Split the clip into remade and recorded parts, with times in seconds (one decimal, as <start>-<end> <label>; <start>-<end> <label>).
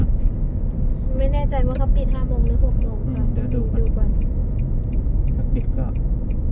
0.0-0.6 remade; 0.6-6.5 recorded